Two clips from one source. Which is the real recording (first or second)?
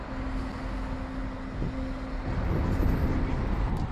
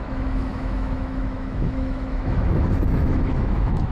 first